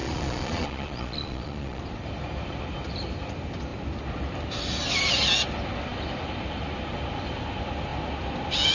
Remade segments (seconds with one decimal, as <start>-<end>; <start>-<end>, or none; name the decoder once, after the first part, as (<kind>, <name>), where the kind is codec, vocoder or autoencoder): 0.0-1.8 (vocoder, Vocos)